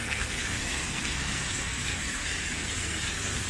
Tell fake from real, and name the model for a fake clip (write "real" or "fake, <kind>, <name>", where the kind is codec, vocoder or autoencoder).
fake, codec, SNAC